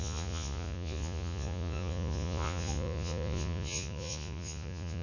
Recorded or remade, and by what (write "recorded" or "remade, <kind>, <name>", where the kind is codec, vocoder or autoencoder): remade, vocoder, Vocos